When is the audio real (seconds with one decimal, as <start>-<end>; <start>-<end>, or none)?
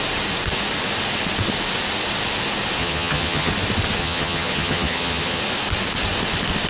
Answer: 0.0-2.8; 3.5-4.0; 5.4-6.7